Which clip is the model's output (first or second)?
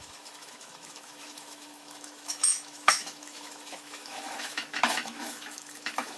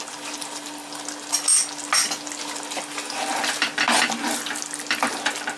first